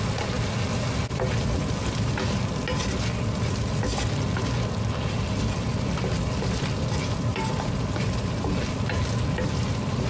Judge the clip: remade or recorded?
recorded